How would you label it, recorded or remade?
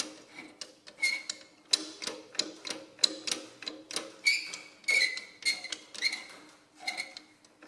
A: recorded